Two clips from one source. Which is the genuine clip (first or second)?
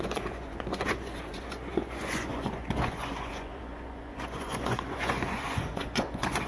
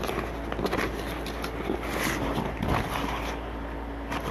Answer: second